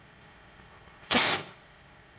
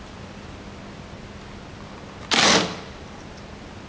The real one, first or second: second